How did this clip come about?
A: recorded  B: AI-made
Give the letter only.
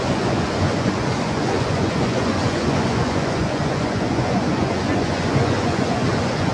B